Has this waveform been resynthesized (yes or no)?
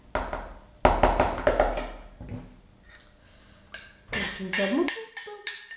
no